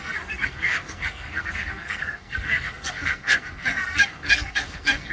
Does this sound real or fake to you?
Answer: fake